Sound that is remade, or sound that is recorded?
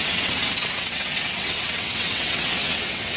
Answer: remade